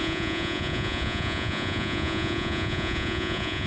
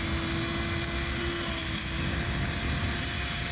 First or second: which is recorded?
second